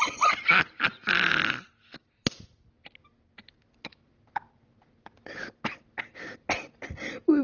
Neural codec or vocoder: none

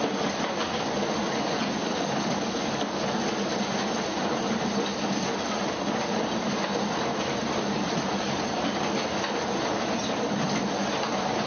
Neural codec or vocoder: none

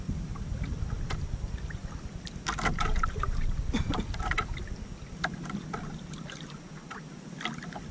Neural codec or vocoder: none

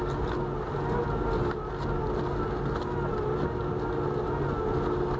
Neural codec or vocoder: none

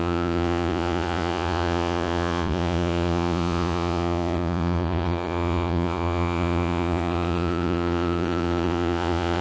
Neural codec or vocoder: vocoder, Vocos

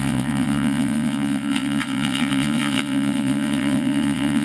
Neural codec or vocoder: vocoder, WaveNeXt